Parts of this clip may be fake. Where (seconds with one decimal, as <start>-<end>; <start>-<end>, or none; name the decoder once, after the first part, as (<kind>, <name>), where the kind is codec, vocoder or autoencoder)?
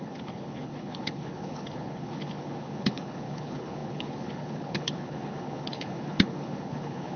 0.0-7.2 (codec, HILCodec)